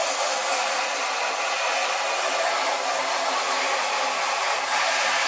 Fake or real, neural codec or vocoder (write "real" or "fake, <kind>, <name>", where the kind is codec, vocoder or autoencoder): real